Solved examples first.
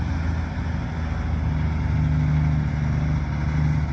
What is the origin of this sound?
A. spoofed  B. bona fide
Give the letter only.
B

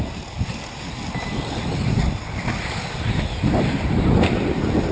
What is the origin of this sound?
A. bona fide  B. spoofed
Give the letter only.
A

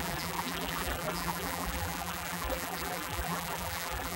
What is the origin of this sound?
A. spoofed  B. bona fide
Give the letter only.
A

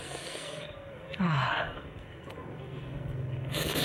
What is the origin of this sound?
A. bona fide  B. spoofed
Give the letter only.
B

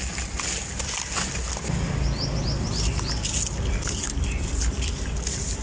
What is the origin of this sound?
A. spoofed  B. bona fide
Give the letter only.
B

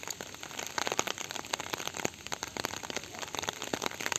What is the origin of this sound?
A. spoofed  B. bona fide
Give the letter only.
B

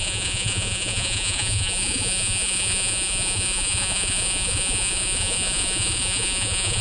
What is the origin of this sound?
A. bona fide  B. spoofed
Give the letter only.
B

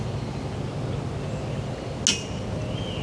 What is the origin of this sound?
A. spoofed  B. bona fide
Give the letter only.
B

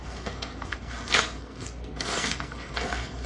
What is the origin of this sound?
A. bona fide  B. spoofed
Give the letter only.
B